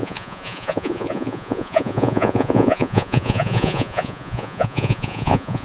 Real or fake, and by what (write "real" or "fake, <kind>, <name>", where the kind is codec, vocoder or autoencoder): fake, vocoder, Vocos